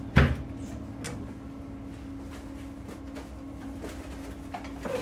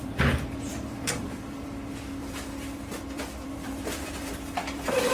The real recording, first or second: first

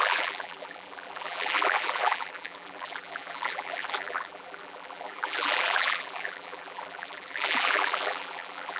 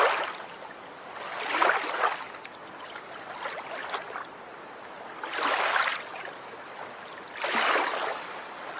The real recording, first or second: second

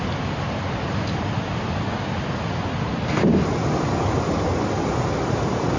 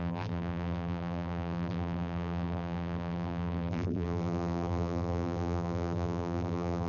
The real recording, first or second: first